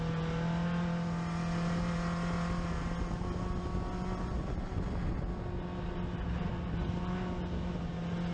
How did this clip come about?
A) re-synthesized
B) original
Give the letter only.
B